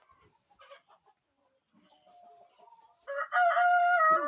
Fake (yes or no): no